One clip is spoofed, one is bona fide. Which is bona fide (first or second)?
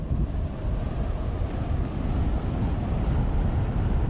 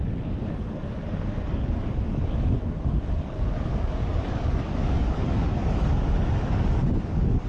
first